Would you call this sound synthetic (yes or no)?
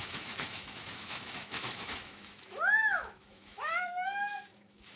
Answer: yes